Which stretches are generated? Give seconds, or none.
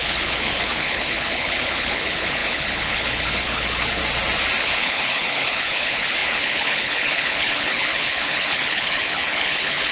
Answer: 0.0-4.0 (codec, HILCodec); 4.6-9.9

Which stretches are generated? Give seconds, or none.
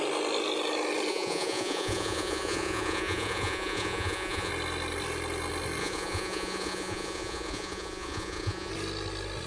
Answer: 1.1-4.5 (vocoder, Vocos); 5.8-8.7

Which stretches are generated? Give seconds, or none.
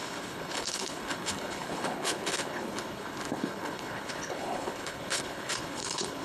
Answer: 0.0-6.2 (codec, HILCodec)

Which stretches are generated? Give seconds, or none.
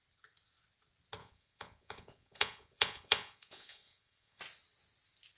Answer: 1.2-4.4 (vocoder, Vocos)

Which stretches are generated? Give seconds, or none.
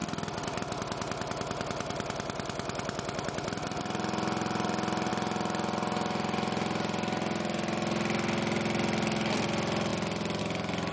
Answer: none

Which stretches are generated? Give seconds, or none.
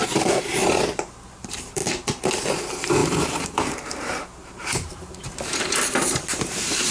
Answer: 0.0-0.6 (vocoder, BigVGAN v2); 1.3-1.8; 2.6-6.9